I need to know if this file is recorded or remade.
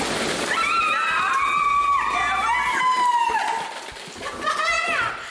recorded